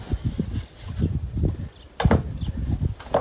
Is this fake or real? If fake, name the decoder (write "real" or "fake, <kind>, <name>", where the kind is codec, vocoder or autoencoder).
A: real